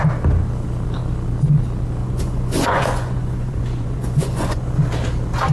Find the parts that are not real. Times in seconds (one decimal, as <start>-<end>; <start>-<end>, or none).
2.0-4.7